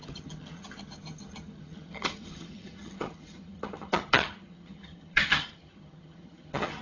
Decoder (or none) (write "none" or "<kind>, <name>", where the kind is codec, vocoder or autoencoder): vocoder, HiFi-GAN